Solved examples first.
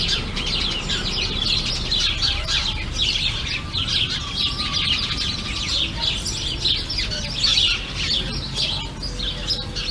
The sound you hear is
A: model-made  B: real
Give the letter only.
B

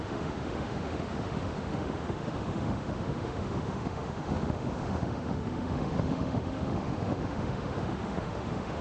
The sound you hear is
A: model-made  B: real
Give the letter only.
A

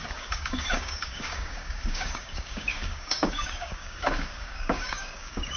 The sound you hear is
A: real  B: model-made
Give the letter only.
B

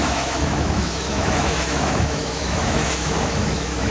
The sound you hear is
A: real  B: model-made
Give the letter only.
B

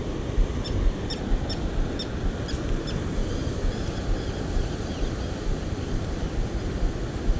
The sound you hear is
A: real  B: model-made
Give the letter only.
A